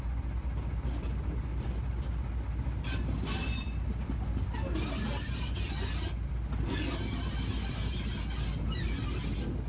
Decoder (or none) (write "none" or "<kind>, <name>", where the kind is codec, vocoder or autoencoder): none